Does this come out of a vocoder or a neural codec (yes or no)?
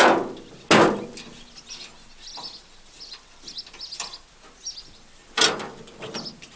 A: no